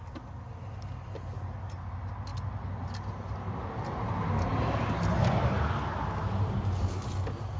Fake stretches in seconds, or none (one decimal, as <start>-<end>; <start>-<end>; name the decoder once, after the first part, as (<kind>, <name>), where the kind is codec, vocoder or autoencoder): none